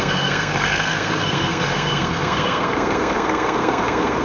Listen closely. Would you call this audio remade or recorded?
remade